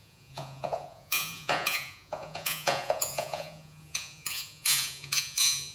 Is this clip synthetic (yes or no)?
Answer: yes